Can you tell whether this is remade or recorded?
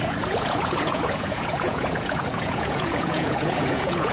remade